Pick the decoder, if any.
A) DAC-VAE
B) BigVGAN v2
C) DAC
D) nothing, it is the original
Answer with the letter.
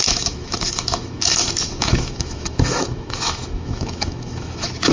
A